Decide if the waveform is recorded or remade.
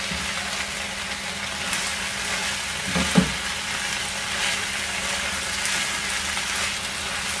recorded